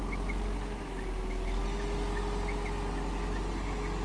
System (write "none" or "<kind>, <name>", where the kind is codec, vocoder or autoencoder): none